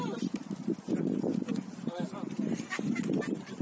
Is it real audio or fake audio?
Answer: real